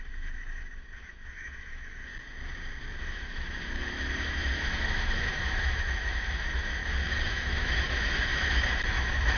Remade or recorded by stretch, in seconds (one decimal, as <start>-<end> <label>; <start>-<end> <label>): 0.0-2.1 remade; 2.1-3.0 recorded; 3.0-6.8 remade; 6.8-7.3 recorded; 7.3-9.4 remade

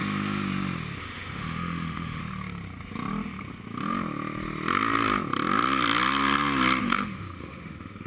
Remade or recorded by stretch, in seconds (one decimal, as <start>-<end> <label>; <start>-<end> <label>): 0.0-1.0 recorded; 1.0-2.2 remade; 2.2-6.8 recorded; 6.8-8.1 remade